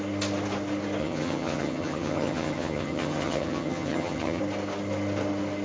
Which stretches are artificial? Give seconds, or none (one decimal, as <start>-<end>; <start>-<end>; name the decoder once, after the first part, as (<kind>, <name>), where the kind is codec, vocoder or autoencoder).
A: 1.0-4.4 (vocoder, HiFi-GAN)